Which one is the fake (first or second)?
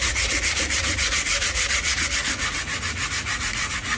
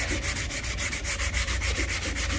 first